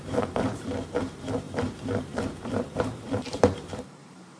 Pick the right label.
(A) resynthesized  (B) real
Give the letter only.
A